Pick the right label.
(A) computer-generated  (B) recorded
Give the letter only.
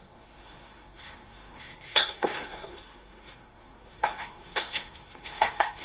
A